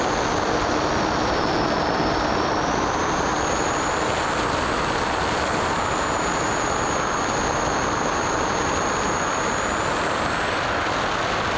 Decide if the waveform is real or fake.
real